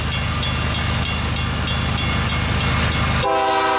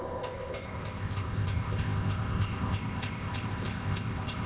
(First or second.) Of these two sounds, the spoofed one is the second